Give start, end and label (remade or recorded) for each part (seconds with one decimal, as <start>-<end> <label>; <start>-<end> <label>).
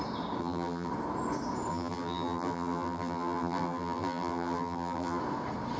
0.0-0.4 recorded; 0.4-0.9 remade; 0.9-1.7 recorded; 1.7-5.2 remade; 5.2-5.8 recorded